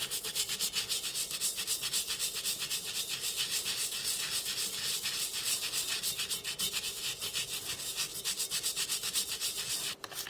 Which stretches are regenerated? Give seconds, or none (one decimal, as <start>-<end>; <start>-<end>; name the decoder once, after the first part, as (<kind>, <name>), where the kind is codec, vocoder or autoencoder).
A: 5.3-7.0 (vocoder, BigVGAN v2); 8.1-9.7